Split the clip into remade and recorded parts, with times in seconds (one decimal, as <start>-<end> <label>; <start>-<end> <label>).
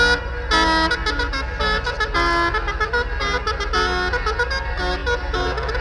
0.0-5.8 recorded